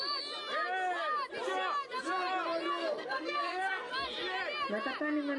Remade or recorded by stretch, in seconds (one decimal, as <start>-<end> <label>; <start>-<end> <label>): 0.0-2.8 recorded; 2.8-3.9 remade; 3.9-5.4 recorded